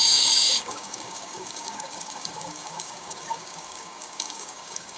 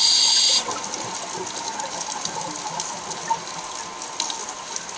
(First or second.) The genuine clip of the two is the second